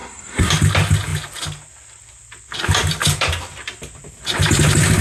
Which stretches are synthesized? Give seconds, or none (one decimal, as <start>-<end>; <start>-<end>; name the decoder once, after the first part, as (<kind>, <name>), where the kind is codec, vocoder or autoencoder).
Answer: 0.0-0.5 (codec, SNAC)